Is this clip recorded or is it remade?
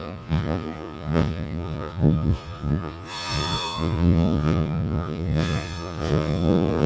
remade